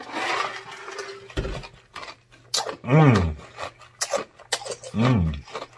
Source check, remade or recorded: recorded